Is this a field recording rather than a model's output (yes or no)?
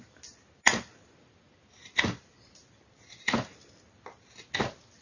yes